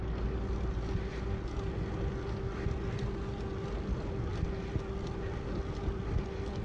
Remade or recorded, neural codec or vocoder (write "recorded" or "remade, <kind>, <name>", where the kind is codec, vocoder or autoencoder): recorded